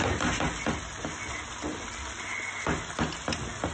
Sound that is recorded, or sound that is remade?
recorded